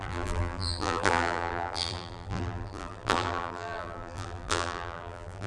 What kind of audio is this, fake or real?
fake